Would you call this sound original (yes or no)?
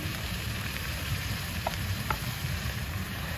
no